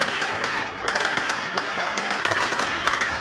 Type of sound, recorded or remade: remade